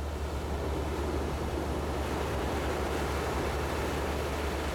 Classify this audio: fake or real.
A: real